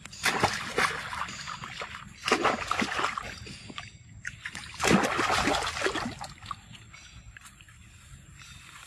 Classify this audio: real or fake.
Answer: real